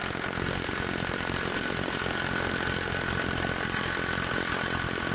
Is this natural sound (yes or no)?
yes